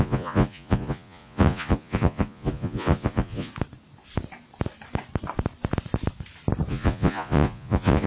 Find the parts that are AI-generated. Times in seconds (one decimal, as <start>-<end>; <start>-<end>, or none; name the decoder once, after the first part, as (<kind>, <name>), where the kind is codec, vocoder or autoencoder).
0.0-3.5 (vocoder, Vocos); 6.7-8.1